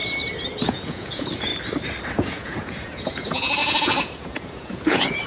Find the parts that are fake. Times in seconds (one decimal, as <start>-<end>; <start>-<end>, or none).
0.6-1.5; 2.1-5.3